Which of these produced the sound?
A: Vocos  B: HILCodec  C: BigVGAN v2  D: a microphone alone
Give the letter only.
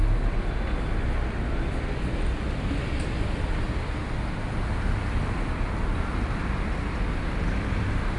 D